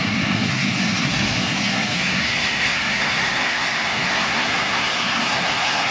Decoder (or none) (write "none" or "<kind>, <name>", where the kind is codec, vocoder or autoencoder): codec, SNAC